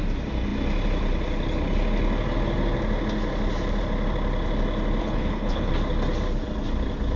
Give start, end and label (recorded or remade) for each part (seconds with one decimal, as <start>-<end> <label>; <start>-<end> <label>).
0.0-5.0 recorded; 5.0-5.7 remade; 5.7-7.2 recorded